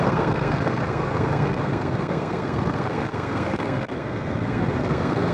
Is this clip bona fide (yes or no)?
no